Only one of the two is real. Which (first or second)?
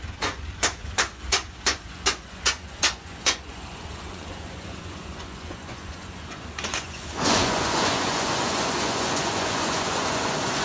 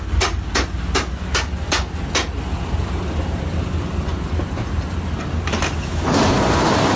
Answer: second